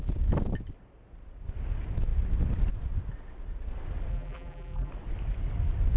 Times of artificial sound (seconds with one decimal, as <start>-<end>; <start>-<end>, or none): 4.1-4.9